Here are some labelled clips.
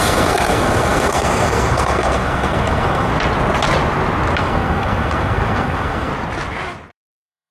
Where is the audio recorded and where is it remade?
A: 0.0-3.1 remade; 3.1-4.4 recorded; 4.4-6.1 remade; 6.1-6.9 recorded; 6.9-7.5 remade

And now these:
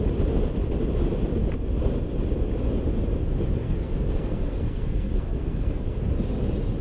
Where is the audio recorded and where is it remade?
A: 0.0-3.6 recorded; 3.6-6.0 remade; 6.0-6.8 recorded